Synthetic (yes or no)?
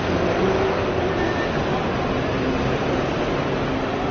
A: no